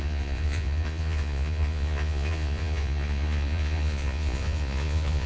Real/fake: fake